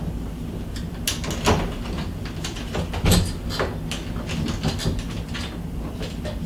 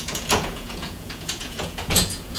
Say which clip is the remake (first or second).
second